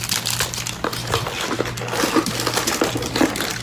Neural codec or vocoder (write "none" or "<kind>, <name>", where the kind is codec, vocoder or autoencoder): none